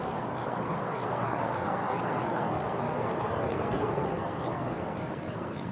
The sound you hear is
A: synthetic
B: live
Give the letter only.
A